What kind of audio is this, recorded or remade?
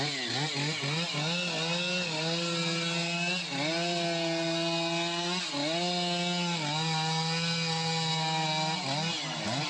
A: recorded